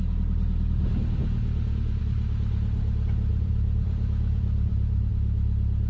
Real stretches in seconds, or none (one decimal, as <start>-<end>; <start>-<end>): 0.0-1.2; 2.0-3.3; 5.1-5.9